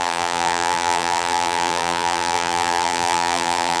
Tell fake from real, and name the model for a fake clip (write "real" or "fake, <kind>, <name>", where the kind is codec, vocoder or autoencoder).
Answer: fake, vocoder, BigVGAN v2